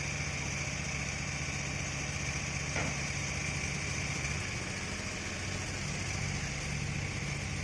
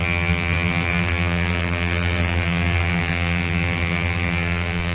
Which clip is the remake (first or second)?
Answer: second